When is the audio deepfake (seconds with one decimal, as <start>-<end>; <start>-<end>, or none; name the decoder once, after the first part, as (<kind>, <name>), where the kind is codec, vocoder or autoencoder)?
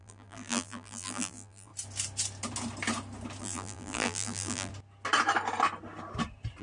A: 0.0-1.7 (vocoder, BigVGAN v2); 3.4-4.7